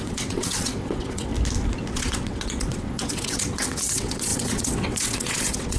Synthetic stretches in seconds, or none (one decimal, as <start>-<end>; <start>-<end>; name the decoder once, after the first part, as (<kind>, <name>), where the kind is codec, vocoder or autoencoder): 0.0-1.3 (vocoder, WaveNeXt); 1.9-5.8